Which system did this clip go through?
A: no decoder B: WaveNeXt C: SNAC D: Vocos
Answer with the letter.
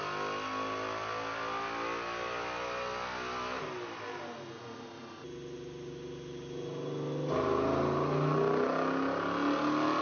A